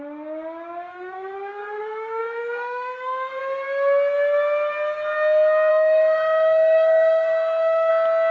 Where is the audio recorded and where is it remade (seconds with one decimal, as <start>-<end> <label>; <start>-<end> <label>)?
0.0-0.9 recorded; 0.9-3.4 remade; 3.4-5.7 recorded; 5.7-7.9 remade; 7.9-8.3 recorded